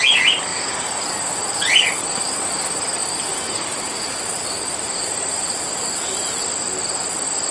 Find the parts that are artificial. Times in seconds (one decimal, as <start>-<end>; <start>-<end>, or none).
0.5-2.5; 3.0-6.4